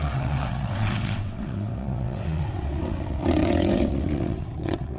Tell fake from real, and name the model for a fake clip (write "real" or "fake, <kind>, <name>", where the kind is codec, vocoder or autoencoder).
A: fake, vocoder, WaveNeXt